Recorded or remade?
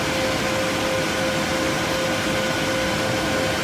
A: recorded